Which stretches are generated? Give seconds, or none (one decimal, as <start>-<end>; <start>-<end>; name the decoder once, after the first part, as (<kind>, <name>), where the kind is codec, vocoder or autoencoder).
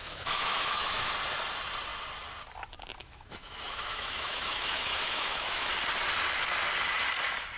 0.0-1.1 (autoencoder, DAC-VAE); 3.0-5.7